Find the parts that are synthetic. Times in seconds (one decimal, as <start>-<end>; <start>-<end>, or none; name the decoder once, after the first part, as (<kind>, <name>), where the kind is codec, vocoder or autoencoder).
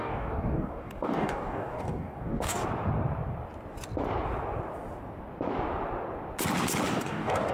0.0-2.6 (codec, DAC); 6.9-7.5